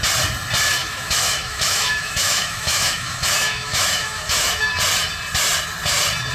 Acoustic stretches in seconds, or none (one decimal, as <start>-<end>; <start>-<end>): 0.0-0.8; 4.6-6.3